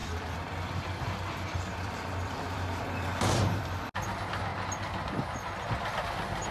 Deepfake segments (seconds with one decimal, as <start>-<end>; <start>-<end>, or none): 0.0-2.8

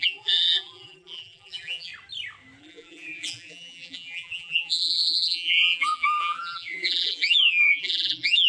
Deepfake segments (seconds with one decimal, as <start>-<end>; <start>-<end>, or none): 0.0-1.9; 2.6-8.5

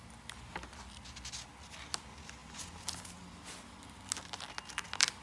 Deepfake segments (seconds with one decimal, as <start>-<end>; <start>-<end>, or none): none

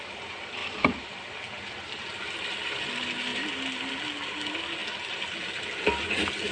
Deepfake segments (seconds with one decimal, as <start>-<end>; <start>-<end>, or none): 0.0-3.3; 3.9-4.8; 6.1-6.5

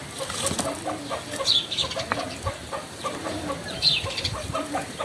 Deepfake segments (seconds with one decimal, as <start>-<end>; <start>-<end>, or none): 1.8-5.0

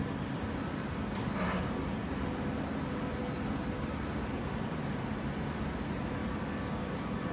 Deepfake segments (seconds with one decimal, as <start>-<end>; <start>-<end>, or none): 6.2-7.3

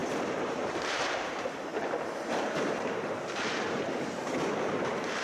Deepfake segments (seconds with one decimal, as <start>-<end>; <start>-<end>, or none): 0.0-5.2